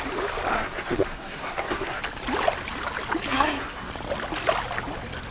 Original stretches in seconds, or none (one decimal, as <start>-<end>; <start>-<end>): 0.0-0.5; 2.0-3.3; 3.9-5.3